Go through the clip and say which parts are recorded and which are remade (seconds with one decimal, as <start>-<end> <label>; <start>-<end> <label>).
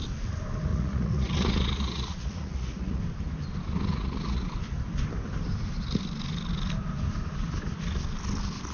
0.0-0.7 recorded; 0.7-3.0 remade; 3.0-3.9 recorded; 3.9-4.5 remade; 4.5-8.7 recorded